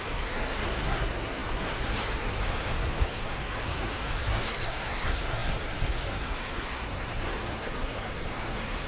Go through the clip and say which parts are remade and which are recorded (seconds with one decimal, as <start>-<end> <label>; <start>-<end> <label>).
0.0-8.9 remade